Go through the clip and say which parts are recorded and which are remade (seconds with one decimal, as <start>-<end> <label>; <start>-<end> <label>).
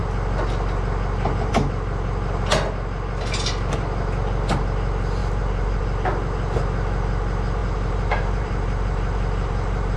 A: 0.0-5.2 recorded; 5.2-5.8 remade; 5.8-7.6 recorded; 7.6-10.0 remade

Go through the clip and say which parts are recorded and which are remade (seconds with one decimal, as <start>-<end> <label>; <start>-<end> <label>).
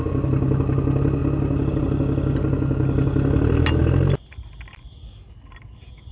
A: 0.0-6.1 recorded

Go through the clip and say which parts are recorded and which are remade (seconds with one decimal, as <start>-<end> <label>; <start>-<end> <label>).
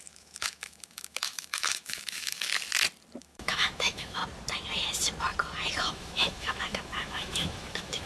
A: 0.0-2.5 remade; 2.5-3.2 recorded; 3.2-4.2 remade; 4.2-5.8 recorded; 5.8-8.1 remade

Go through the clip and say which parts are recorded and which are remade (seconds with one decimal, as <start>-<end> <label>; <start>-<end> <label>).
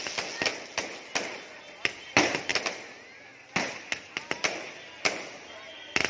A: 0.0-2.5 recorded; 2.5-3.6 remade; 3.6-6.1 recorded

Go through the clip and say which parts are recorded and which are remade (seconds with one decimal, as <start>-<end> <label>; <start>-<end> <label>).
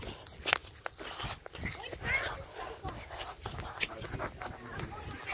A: 0.0-5.3 recorded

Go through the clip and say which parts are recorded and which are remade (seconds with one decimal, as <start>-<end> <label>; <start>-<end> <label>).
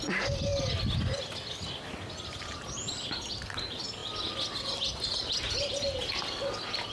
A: 0.0-6.9 recorded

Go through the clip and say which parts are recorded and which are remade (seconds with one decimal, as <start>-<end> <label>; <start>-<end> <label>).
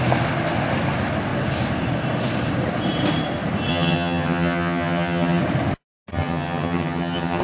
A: 0.0-3.7 recorded; 3.7-5.4 remade; 5.4-6.1 recorded; 6.1-7.4 remade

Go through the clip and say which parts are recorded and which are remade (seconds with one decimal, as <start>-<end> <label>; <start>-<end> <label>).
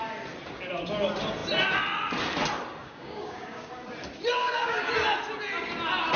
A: 0.0-2.8 recorded; 2.8-3.7 remade; 3.7-4.4 recorded; 4.4-4.9 remade; 4.9-6.2 recorded